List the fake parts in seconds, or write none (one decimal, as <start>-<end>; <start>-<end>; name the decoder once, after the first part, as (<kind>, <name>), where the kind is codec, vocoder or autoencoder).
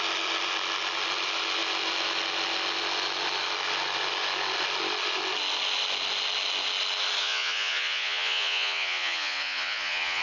7.2-10.2 (vocoder, Vocos)